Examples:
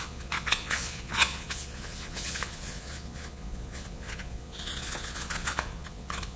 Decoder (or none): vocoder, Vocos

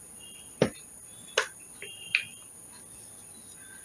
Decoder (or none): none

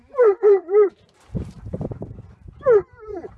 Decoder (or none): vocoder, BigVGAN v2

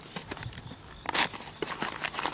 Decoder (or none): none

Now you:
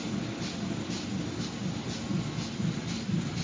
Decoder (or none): none